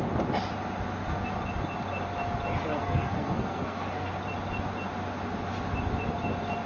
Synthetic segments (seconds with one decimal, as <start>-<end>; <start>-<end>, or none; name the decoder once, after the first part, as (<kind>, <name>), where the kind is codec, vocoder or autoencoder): 2.7-4.1 (codec, SNAC)